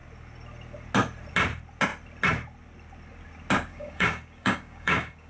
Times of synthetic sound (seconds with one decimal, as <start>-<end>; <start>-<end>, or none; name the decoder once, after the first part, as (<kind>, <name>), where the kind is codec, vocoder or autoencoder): 3.7-5.3 (codec, DAC)